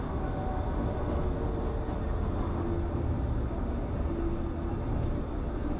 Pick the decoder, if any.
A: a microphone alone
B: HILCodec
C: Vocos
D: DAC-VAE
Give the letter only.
A